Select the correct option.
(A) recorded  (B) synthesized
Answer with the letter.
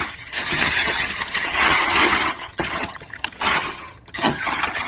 B